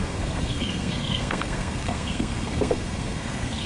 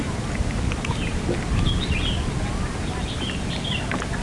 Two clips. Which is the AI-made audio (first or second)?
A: first